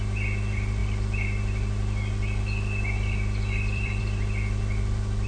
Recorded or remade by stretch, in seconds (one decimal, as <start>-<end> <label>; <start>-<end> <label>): 0.0-0.8 recorded; 0.8-4.0 remade; 4.0-5.3 recorded